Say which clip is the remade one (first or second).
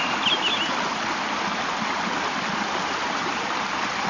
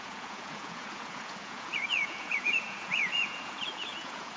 second